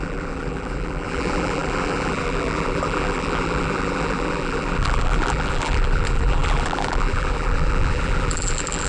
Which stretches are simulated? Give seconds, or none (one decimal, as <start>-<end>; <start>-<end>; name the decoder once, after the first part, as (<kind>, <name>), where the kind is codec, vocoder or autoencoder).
0.0-8.9 (vocoder, BigVGAN v2)